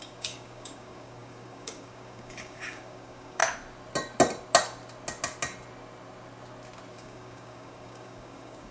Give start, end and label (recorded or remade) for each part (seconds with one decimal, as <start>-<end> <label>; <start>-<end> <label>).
0.0-3.4 remade; 3.4-6.9 recorded; 6.9-8.7 remade